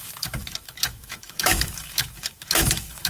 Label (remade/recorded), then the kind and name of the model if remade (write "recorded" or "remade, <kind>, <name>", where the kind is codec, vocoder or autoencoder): remade, autoencoder, DAC-VAE